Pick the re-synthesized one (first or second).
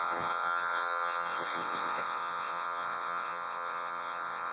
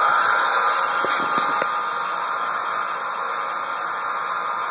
first